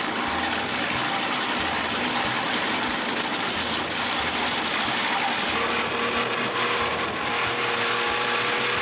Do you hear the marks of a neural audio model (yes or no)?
no